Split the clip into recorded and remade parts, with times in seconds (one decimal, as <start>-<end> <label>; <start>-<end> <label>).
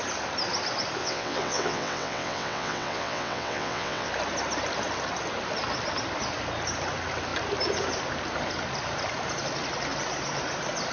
0.0-1.0 recorded; 1.0-4.1 remade; 4.1-10.9 recorded